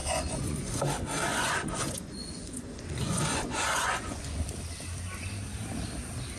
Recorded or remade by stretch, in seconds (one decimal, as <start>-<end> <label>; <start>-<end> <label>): 0.0-0.8 remade; 0.8-1.3 recorded; 1.3-4.4 remade; 4.4-6.4 recorded

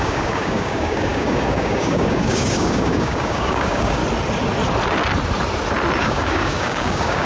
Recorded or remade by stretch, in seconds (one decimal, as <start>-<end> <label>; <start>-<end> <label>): 0.0-4.0 remade; 4.0-6.0 recorded; 6.0-7.3 remade

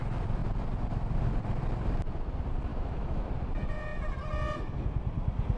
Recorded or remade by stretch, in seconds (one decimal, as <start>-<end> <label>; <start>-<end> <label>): 0.0-2.7 recorded; 2.7-3.3 remade; 3.3-5.6 recorded